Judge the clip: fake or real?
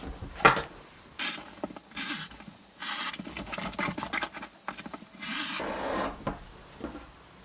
real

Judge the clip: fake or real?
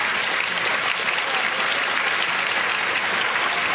real